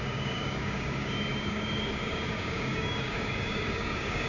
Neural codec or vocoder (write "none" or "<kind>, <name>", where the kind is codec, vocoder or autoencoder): codec, DAC